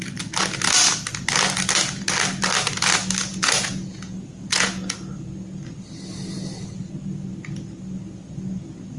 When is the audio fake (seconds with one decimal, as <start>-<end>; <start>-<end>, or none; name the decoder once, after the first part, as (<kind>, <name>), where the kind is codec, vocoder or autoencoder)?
3.3-5.1 (vocoder, Vocos)